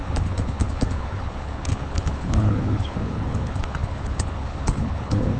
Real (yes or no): no